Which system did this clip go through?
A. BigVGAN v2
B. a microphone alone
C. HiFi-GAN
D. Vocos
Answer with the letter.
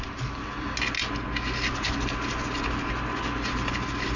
B